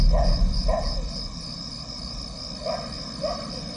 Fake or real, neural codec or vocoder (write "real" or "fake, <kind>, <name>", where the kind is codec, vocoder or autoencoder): real